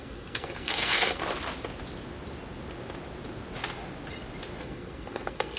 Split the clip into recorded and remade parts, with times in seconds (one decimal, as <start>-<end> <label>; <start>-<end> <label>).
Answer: 0.0-1.2 remade; 1.2-4.6 recorded; 4.6-5.6 remade